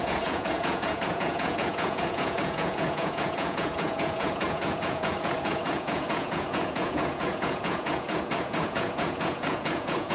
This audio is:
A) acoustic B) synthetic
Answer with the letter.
B